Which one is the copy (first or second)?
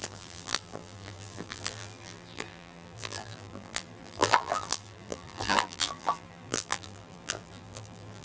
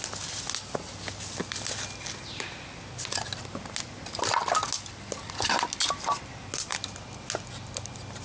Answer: first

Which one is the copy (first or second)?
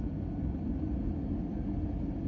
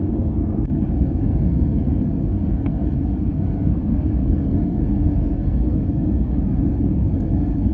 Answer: second